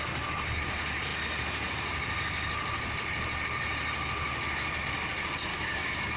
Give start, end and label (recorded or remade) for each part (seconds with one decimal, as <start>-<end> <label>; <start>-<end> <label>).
0.0-5.5 recorded; 5.5-6.2 remade